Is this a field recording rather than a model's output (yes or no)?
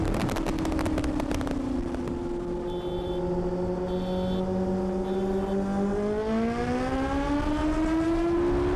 yes